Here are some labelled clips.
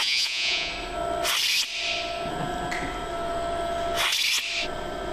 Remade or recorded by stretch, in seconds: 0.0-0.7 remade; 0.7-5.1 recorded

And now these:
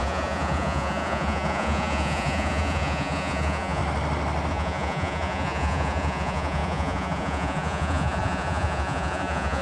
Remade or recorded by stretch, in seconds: 0.0-3.8 remade; 3.8-4.5 recorded; 4.5-9.6 remade

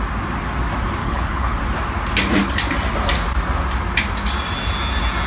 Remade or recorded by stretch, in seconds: 0.0-1.0 recorded; 1.0-1.6 remade; 1.6-5.3 recorded